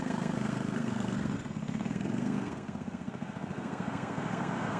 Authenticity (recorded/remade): remade